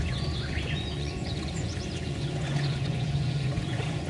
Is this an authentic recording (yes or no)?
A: no